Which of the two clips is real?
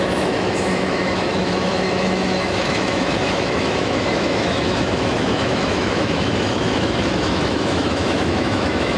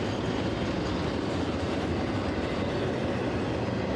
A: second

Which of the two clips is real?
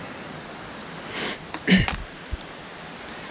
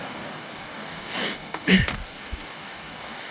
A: first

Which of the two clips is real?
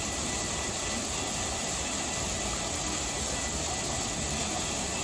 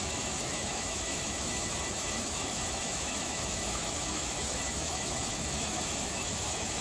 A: first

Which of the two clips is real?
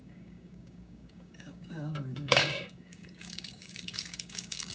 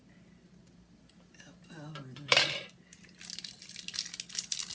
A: second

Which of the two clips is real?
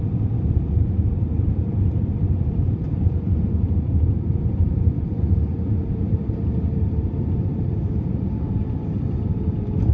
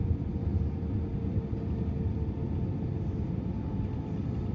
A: second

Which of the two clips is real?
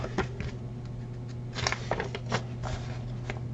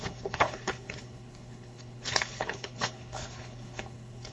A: first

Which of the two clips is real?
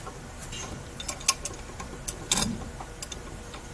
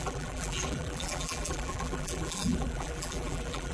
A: first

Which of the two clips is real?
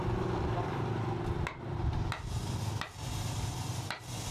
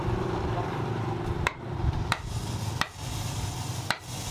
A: first